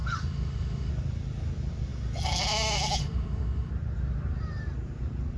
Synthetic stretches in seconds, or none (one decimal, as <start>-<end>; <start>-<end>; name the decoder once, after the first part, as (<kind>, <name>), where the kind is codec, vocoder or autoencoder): 0.0-0.9 (autoencoder, DAC-VAE); 3.0-3.7